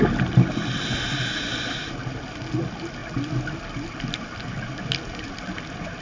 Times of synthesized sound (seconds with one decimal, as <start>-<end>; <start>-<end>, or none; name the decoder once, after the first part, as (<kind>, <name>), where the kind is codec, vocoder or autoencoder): none